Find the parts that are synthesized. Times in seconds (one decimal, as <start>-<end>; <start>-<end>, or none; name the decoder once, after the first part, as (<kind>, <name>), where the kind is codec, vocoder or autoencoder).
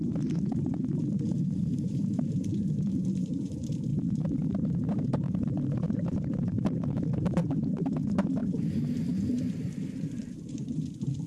0.0-3.9 (vocoder, BigVGAN v2); 5.0-8.4; 9.5-11.3